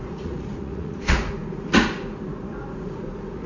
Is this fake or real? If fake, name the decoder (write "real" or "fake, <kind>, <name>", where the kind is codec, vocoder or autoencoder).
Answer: fake, vocoder, Vocos